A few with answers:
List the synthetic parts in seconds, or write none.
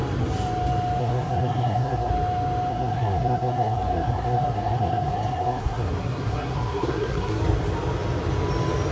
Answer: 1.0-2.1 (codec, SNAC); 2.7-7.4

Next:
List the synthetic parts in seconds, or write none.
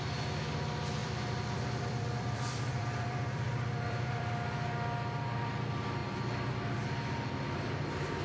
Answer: 1.0-4.3 (vocoder, BigVGAN v2)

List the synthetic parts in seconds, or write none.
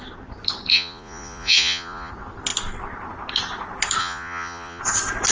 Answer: 0.7-2.1 (vocoder, Vocos); 4.0-4.8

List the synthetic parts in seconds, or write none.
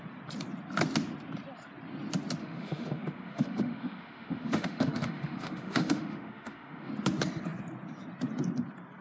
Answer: 2.4-6.9 (autoencoder, DAC-VAE)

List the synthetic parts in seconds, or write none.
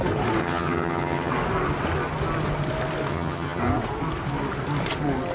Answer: 0.4-1.3 (vocoder, HiFi-GAN); 3.1-3.6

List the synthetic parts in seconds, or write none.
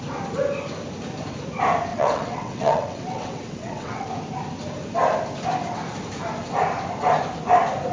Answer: 1.9-4.1 (vocoder, WaveNeXt)